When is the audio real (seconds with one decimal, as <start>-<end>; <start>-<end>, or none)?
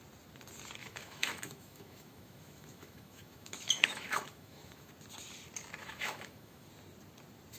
0.0-0.8; 4.9-5.8; 6.7-7.6